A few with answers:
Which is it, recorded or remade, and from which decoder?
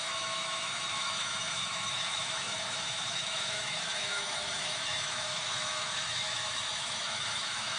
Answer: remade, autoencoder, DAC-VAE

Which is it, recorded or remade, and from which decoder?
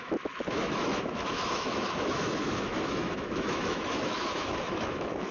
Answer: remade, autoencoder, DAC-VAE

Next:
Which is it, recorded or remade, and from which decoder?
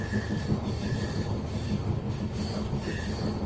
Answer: recorded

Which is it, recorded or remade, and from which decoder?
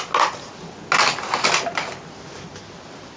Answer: recorded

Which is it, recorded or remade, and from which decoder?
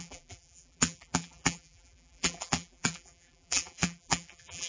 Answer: remade, vocoder, BigVGAN v2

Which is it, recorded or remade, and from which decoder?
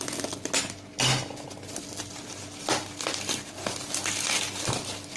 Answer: recorded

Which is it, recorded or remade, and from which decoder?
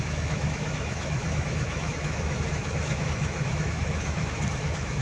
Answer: remade, autoencoder, DAC-VAE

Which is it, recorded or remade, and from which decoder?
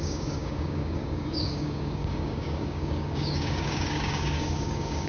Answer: remade, codec, DAC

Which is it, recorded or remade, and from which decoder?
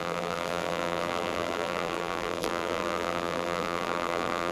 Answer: remade, vocoder, BigVGAN v2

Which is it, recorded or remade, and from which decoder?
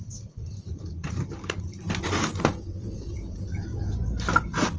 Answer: recorded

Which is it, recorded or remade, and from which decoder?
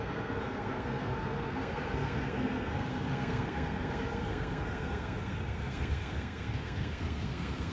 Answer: remade, codec, SNAC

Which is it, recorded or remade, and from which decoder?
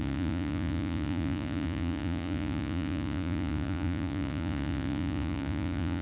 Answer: remade, vocoder, Vocos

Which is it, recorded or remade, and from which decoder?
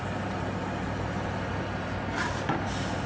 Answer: recorded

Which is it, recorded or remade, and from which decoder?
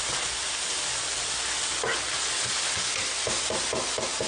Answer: recorded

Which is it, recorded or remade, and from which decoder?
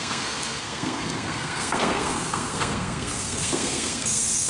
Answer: remade, codec, SNAC